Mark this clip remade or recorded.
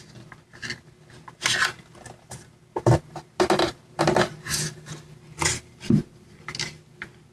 recorded